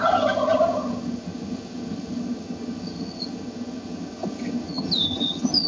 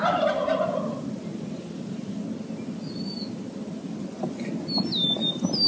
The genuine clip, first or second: second